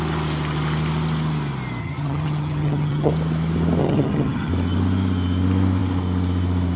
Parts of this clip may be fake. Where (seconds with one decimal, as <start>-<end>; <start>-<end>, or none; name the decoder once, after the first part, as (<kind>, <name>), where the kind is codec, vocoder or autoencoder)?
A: 1.8-3.1 (vocoder, HiFi-GAN); 3.8-4.5